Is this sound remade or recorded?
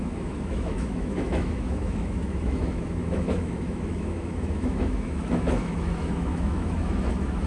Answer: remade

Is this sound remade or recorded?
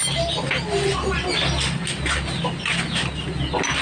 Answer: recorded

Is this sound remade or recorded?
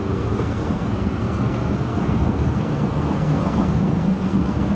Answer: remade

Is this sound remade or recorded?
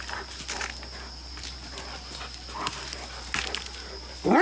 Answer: recorded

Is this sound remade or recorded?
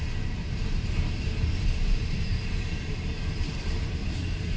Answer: remade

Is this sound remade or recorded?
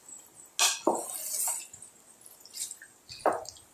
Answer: recorded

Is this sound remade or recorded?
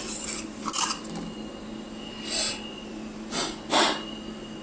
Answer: recorded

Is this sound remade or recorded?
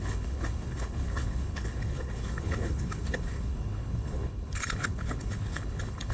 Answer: remade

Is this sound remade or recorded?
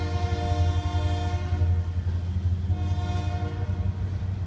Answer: recorded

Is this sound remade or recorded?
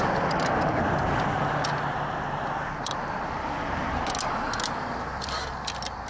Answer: recorded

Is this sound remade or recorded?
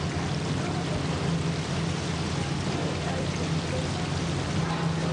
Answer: recorded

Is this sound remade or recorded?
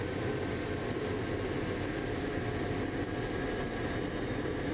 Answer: recorded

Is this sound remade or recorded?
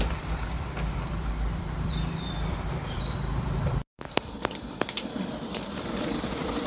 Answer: remade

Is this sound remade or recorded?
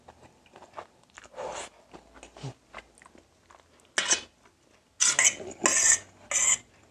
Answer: recorded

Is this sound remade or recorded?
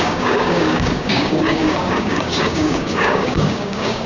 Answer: remade